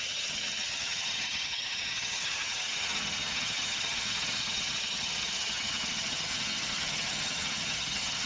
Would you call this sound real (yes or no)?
no